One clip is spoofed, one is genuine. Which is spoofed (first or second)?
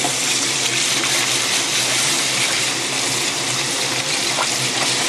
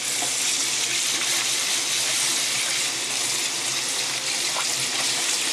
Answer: first